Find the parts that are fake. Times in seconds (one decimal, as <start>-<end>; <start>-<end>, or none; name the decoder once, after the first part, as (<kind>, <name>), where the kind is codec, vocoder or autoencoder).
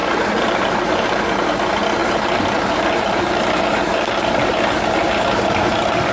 0.0-1.3 (vocoder, BigVGAN v2); 2.0-4.5